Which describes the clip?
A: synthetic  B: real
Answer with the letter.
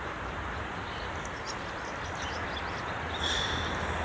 B